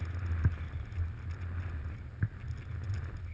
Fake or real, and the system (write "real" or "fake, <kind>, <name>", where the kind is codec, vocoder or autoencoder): real